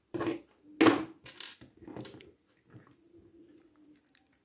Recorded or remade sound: recorded